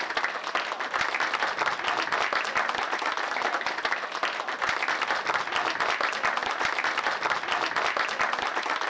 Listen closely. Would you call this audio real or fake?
real